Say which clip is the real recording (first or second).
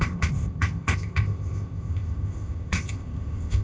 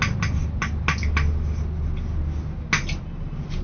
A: second